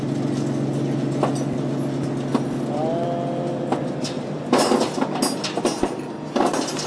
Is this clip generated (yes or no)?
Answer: no